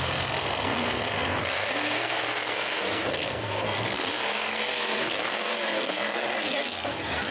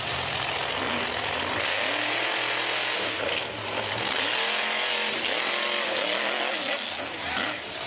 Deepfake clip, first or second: first